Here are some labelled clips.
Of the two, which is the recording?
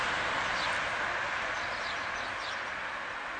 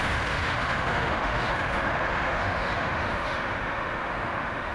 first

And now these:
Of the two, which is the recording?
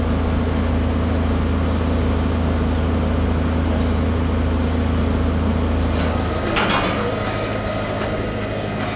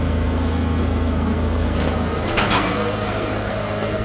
first